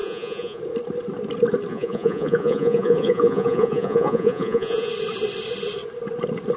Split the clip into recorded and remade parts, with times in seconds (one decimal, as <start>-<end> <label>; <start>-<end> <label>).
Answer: 0.0-0.6 remade; 0.6-1.7 recorded; 1.7-4.9 remade; 4.9-6.6 recorded